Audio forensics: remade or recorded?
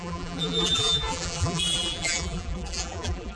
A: remade